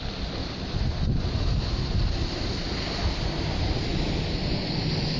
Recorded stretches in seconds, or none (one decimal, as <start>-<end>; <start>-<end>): 0.0-0.4; 3.5-3.9; 4.6-5.2